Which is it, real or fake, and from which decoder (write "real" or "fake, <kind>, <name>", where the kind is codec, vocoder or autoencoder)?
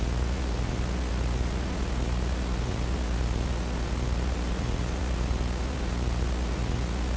fake, vocoder, Vocos